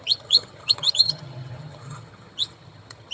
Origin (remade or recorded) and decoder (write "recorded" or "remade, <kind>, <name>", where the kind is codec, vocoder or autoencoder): remade, vocoder, HiFi-GAN